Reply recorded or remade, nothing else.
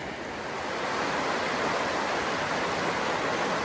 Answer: recorded